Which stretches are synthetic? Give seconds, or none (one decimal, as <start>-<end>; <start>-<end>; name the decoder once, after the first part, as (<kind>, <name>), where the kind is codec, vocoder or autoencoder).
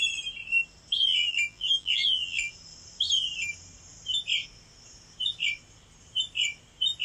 1.1-2.5 (vocoder, BigVGAN v2)